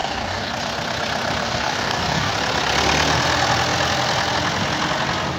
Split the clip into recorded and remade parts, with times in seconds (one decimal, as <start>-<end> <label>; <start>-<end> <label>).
0.0-0.5 remade; 0.5-1.4 recorded; 1.4-2.3 remade; 2.3-5.4 recorded

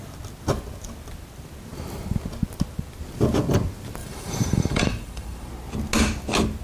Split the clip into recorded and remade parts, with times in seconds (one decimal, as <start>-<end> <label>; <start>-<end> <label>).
0.0-4.0 recorded; 4.0-5.5 remade; 5.5-6.6 recorded